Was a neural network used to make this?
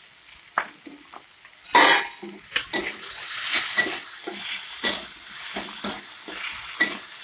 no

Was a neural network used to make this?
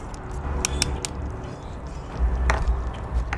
no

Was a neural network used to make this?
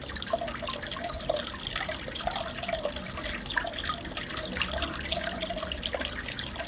no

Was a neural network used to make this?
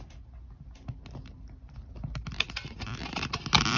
no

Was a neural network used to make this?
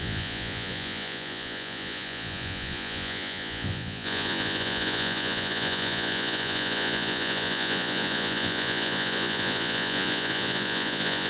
yes